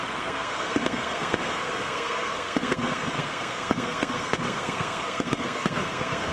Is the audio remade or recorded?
remade